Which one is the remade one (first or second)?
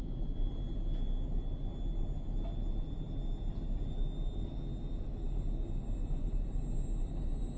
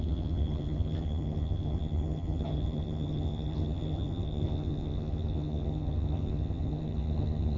second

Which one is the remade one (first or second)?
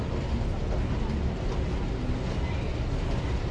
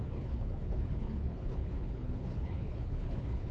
second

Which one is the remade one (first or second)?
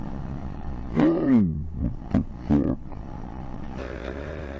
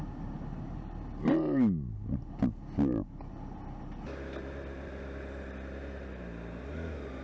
first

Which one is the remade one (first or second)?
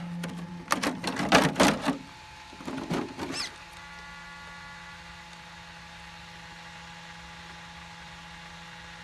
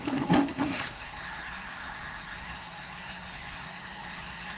second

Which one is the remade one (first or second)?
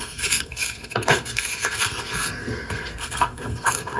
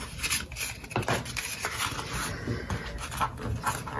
first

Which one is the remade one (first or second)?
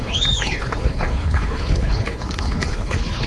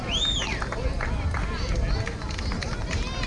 first